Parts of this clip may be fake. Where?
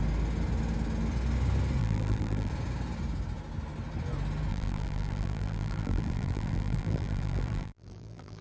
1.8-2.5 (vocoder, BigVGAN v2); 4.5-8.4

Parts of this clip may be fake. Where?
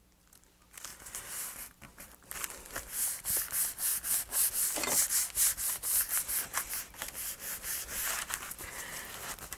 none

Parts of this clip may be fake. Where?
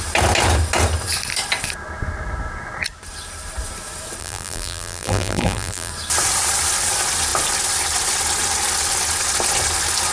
4.2-5.9 (vocoder, BigVGAN v2)